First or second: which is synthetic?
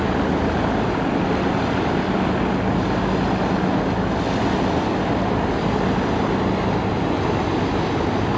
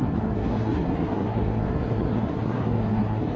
second